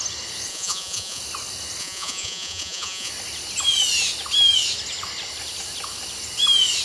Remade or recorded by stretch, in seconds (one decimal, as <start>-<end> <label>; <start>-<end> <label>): 0.0-0.5 recorded; 0.5-1.2 remade; 1.2-1.8 recorded; 1.8-3.1 remade; 3.1-6.8 recorded